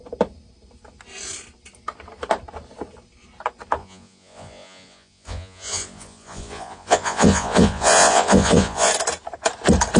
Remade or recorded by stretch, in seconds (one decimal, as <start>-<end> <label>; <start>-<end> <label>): 0.0-3.8 recorded; 3.8-8.9 remade; 8.9-10.0 recorded